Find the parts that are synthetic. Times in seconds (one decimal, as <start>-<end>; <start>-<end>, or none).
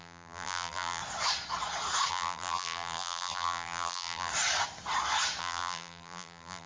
0.0-1.0; 2.1-4.3; 5.4-6.7